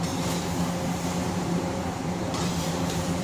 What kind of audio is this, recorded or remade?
remade